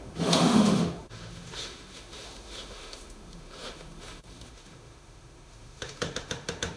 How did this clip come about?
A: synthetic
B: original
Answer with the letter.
A